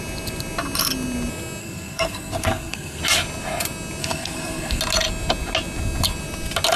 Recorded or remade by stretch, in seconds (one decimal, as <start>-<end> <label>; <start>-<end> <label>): 0.0-1.6 recorded; 1.6-3.0 remade; 3.0-4.0 recorded; 4.0-4.8 remade; 4.8-6.8 recorded